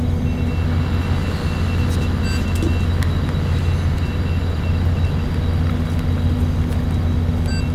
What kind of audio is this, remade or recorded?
recorded